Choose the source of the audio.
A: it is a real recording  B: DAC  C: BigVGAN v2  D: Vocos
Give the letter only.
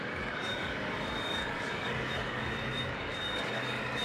B